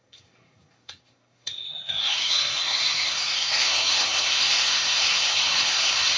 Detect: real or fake fake